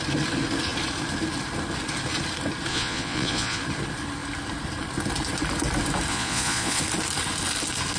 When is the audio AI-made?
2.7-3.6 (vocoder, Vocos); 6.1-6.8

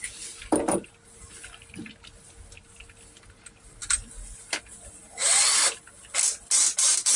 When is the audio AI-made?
none

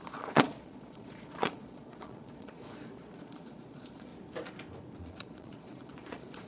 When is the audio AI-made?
0.0-4.1 (vocoder, Vocos); 5.0-6.5

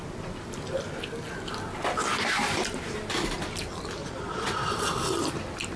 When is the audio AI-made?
4.0-4.7 (vocoder, Vocos)

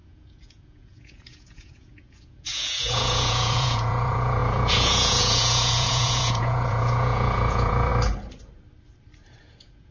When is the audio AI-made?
0.0-7.9 (vocoder, Vocos); 9.4-9.9

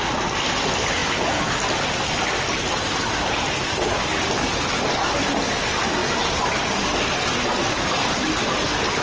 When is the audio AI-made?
none

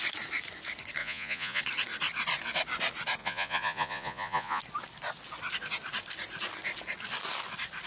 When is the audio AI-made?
1.0-1.6 (vocoder, Vocos); 3.2-4.6

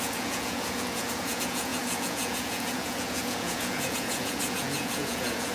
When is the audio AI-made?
0.0-5.5 (vocoder, Vocos)